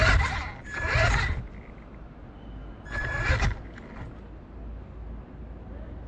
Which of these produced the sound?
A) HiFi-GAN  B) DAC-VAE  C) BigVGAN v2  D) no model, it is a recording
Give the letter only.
D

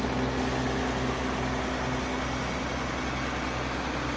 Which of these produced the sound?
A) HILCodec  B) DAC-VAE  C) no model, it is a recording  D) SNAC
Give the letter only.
C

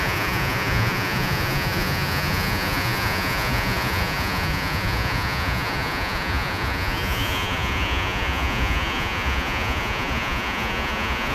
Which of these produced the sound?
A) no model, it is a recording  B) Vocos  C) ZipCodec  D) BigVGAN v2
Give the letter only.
B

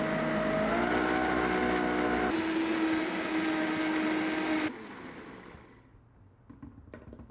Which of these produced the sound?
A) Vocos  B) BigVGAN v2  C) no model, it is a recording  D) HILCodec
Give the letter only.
C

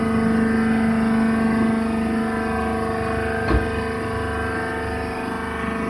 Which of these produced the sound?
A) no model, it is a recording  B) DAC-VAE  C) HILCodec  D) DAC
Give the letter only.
A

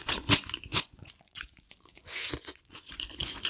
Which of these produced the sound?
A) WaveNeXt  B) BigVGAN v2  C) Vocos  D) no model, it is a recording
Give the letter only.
C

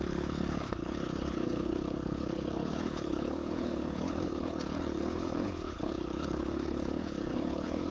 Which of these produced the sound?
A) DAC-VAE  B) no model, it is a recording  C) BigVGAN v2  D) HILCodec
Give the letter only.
D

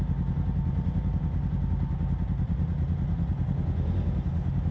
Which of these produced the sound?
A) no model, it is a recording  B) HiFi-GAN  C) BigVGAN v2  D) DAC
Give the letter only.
A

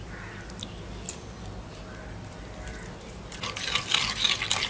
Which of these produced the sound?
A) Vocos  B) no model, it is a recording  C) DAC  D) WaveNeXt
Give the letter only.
B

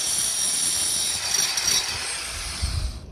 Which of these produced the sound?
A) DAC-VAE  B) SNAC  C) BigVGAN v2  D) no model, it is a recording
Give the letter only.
D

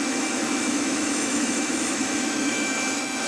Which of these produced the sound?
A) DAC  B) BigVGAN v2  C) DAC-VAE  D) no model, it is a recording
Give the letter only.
C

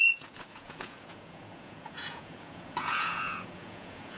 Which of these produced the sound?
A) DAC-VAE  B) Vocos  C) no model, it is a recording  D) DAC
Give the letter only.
B